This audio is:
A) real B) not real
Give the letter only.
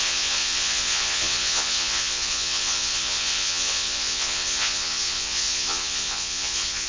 B